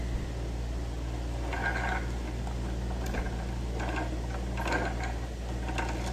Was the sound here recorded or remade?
recorded